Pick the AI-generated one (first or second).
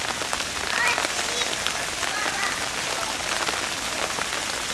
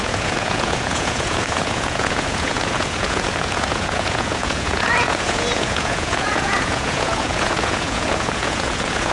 second